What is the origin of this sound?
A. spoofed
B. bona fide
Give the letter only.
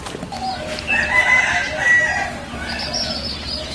B